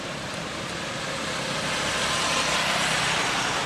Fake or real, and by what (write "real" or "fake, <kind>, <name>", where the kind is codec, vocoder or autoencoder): real